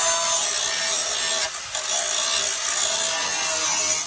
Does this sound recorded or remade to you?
recorded